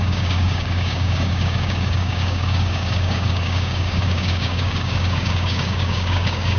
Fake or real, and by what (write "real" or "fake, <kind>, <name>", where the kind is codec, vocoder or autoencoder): fake, codec, DAC